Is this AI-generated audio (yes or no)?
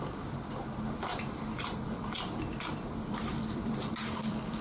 yes